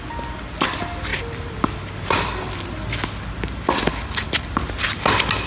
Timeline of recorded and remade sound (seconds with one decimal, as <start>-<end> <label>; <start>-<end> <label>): 0.0-1.1 recorded; 1.1-1.7 remade; 1.7-3.9 recorded; 3.9-4.5 remade; 4.5-5.5 recorded